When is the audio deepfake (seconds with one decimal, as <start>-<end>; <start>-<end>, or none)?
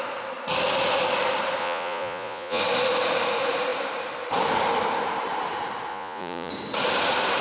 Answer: 1.6-2.6; 5.9-6.5